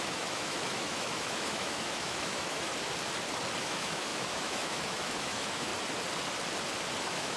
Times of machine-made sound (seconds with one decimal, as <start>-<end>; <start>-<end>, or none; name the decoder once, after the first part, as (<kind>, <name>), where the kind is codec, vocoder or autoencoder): 0.0-2.7 (autoencoder, DAC-VAE); 3.6-5.7; 7.0-7.4